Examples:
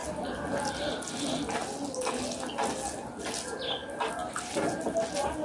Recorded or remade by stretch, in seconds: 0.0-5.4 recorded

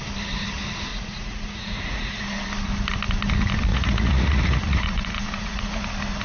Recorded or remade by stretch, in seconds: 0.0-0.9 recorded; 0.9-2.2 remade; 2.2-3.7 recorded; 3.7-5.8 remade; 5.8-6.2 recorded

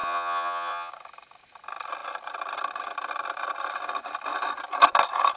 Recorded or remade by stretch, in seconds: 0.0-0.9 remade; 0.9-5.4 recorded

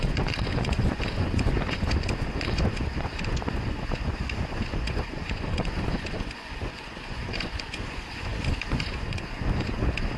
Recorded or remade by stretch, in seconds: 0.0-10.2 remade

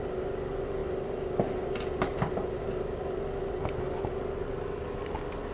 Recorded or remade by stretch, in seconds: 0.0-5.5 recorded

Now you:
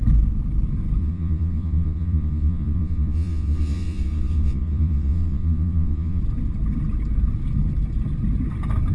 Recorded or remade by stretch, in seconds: 0.0-1.0 recorded; 1.0-6.2 remade; 6.2-8.9 recorded